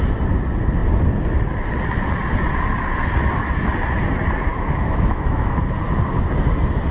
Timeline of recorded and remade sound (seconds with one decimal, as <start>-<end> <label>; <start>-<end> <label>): 0.0-4.5 recorded; 4.5-5.6 remade; 5.6-6.9 recorded